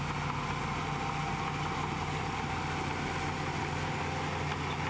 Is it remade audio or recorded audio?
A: recorded